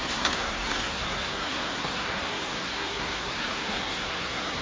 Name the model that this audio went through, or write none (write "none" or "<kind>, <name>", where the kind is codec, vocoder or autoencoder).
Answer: codec, SNAC